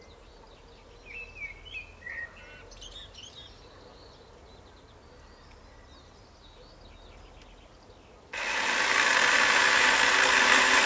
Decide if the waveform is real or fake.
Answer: real